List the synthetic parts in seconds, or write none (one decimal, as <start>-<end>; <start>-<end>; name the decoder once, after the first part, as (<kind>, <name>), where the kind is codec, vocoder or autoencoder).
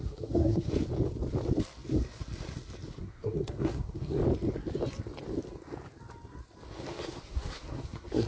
0.0-0.7 (codec, SNAC); 3.0-4.2; 6.8-8.3